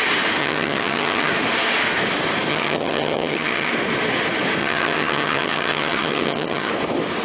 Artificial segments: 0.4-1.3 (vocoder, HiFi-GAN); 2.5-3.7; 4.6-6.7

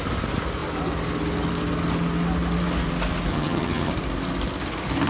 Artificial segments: 3.3-3.9 (vocoder, HiFi-GAN)

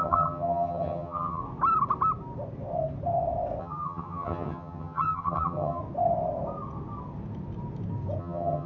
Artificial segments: 0.0-1.4 (vocoder, HiFi-GAN); 3.6-5.8; 8.2-8.7

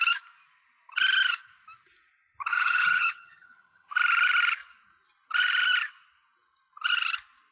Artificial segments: 2.5-3.9 (vocoder, HiFi-GAN)

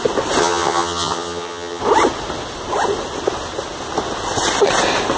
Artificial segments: 0.4-1.8 (vocoder, HiFi-GAN)

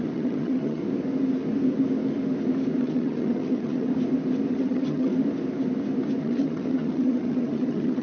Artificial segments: 0.0-0.8 (vocoder, HiFi-GAN); 2.8-3.9; 4.5-5.1; 6.2-8.0

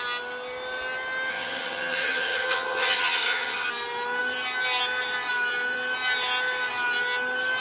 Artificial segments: 1.3-3.7 (vocoder, HiFi-GAN)

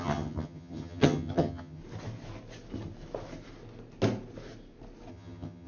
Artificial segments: 0.0-1.8 (vocoder, HiFi-GAN); 5.1-5.7